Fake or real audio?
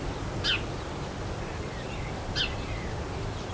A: real